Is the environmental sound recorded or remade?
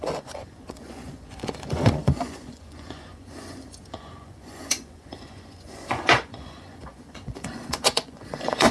remade